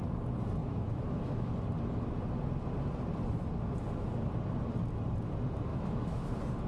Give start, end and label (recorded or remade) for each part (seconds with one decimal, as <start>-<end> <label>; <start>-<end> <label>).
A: 0.0-0.6 recorded; 0.6-1.5 remade; 1.5-5.7 recorded; 5.7-6.3 remade; 6.3-6.7 recorded